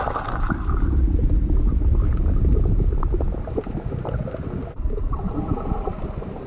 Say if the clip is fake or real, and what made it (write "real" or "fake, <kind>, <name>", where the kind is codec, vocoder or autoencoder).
real